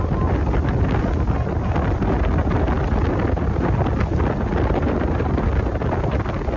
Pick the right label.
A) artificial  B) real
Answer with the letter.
B